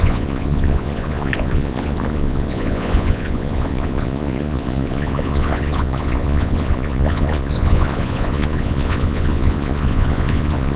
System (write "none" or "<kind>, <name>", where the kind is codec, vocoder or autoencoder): vocoder, Vocos